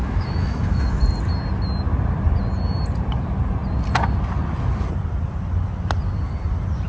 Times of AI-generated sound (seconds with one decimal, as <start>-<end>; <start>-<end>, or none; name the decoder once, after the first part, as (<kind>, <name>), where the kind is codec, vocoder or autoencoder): 0.0-1.0 (autoencoder, DAC-VAE)